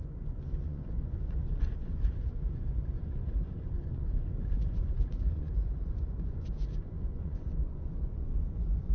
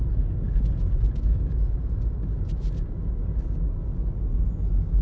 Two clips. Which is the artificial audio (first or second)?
first